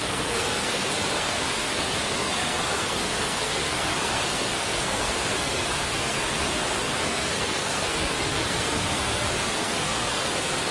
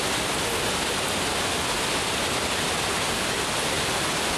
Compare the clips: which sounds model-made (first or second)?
first